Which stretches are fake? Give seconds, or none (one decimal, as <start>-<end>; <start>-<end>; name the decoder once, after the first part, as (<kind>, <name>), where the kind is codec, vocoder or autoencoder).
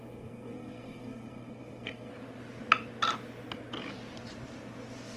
0.0-2.1 (codec, SNAC)